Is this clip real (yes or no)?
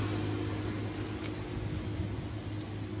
yes